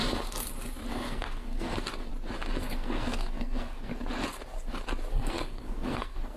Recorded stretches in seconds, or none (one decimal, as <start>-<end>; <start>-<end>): 0.0-0.9; 2.1-2.6; 3.9-5.1

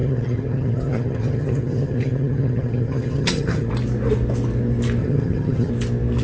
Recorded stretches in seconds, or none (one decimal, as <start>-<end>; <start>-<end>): 3.7-5.0; 5.7-6.2

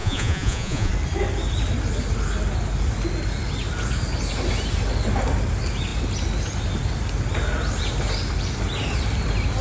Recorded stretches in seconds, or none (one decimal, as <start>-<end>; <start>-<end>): 0.9-9.6

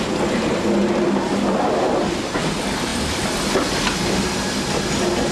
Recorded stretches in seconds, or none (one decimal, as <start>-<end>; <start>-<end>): 0.0-0.8; 2.5-5.3